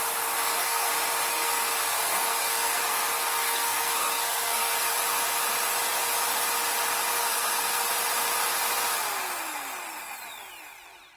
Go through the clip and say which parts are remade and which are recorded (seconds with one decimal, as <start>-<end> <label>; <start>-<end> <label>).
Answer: 0.0-0.4 recorded; 0.4-0.9 remade; 0.9-1.3 recorded; 1.3-4.9 remade; 4.9-7.1 recorded; 7.1-7.9 remade; 7.9-11.2 recorded